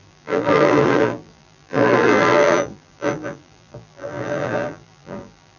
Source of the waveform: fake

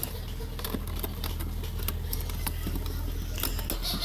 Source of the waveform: real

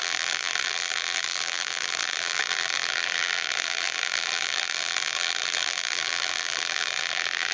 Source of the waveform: fake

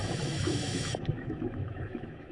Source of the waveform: fake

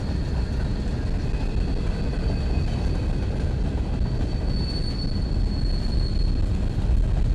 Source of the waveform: real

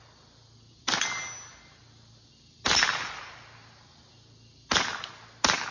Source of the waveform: real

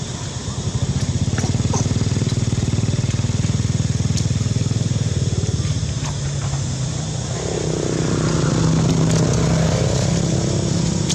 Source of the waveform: real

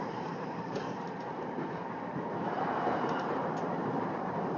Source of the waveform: fake